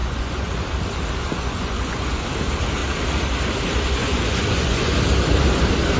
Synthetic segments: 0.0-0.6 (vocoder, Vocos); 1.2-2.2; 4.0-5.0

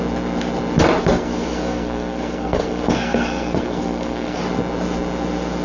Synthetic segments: 1.0-4.4 (codec, SNAC)